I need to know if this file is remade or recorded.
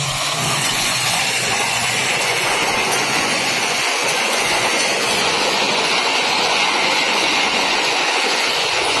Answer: remade